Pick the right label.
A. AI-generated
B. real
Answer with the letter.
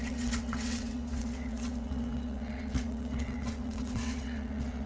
A